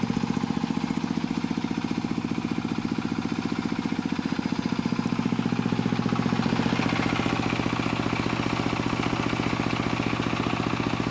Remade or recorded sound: recorded